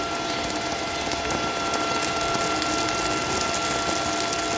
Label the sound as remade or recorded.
recorded